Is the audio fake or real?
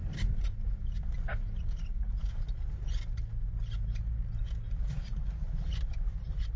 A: real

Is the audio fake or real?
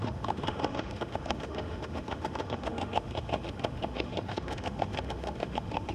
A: fake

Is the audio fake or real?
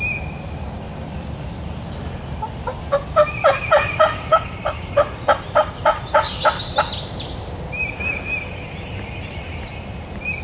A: fake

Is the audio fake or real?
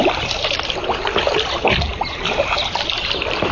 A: real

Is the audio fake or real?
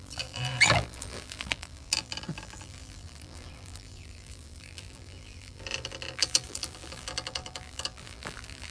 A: fake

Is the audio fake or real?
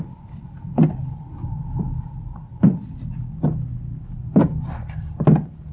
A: fake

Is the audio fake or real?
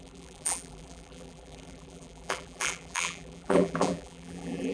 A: fake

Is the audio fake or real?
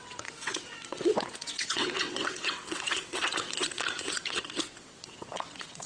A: fake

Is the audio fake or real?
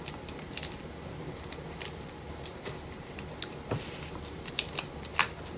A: real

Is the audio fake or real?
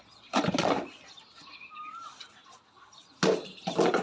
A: real